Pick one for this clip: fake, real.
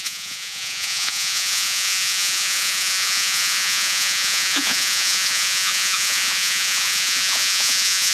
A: fake